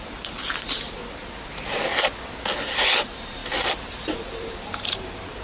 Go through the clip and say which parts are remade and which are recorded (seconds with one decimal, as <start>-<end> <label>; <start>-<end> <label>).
0.0-1.0 remade; 1.0-2.6 recorded; 2.6-3.4 remade; 3.4-4.3 recorded; 4.3-5.4 remade